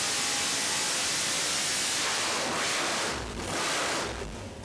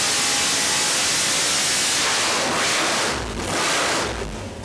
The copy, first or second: first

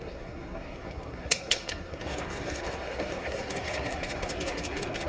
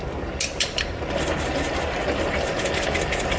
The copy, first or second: first